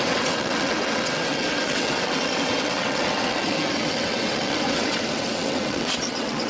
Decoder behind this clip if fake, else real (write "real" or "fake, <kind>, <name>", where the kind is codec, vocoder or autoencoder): fake, vocoder, WaveNeXt